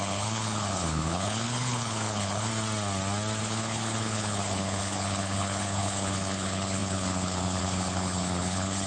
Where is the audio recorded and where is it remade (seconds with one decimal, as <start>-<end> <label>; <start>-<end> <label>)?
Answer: 0.0-2.5 remade; 2.5-3.4 recorded; 3.4-8.9 remade